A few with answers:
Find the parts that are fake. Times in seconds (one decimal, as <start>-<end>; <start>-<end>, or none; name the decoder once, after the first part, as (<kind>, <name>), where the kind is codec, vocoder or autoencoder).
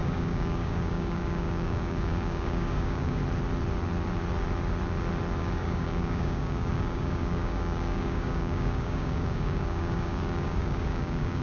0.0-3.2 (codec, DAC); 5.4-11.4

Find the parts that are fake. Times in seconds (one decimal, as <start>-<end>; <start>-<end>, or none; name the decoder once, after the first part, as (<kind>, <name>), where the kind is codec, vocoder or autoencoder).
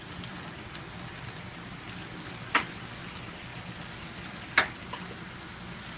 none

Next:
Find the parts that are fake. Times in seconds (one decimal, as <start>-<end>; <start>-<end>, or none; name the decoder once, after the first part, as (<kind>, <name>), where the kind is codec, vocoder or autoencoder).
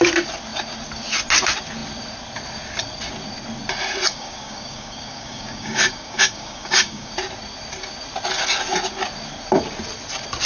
4.1-7.1 (codec, DAC)